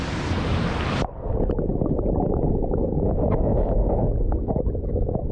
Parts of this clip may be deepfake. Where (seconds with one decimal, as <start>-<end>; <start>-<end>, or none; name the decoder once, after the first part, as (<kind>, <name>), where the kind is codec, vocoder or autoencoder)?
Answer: 1.7-5.3 (autoencoder, DAC-VAE)

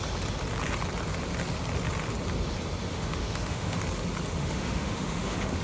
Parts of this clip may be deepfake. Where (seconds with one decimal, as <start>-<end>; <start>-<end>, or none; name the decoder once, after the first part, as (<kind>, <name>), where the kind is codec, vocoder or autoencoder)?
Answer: 2.9-3.8 (autoencoder, DAC-VAE); 4.4-5.6

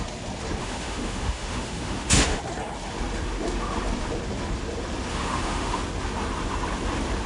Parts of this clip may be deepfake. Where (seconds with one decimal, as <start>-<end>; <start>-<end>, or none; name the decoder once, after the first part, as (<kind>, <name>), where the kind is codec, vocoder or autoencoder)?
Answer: 0.6-2.4 (autoencoder, DAC-VAE); 5.1-5.8

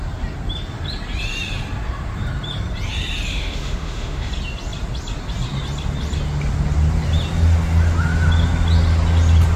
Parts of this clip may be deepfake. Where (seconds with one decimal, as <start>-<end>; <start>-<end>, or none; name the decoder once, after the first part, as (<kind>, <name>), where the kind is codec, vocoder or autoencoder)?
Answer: 3.3-4.3 (autoencoder, DAC-VAE)

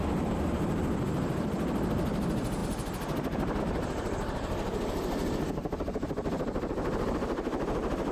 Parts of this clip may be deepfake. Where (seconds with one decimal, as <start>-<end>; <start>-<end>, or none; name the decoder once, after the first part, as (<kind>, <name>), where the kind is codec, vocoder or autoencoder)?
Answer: none

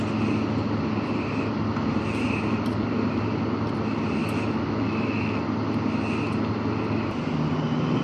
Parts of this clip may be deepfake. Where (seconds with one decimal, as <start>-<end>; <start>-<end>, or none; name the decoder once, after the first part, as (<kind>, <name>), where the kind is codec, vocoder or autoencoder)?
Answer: 4.2-5.4 (autoencoder, DAC-VAE)